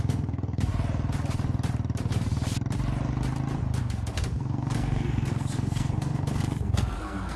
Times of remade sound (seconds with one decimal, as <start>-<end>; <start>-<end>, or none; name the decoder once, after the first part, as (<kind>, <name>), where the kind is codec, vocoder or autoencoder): 0.0-0.7 (codec, SNAC); 3.8-7.4